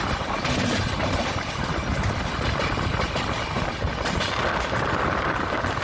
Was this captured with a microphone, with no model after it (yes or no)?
yes